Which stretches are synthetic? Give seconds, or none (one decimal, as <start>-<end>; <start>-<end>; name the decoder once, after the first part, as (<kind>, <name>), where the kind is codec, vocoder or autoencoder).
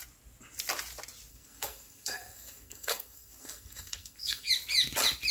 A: 1.3-4.5 (codec, SNAC)